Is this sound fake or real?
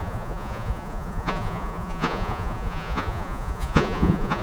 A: fake